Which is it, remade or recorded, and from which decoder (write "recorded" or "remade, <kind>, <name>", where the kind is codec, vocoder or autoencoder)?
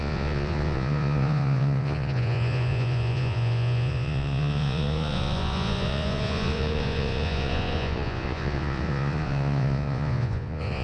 remade, vocoder, Vocos